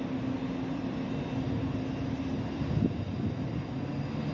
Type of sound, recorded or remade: recorded